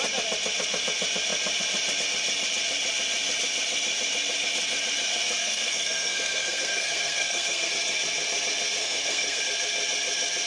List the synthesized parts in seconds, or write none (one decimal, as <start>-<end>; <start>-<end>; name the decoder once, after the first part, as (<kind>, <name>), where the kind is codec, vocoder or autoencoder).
5.4-7.7 (codec, SNAC); 8.8-9.4